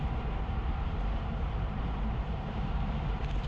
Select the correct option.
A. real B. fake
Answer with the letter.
B